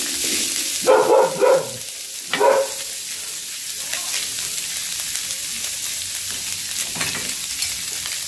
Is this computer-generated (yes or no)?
no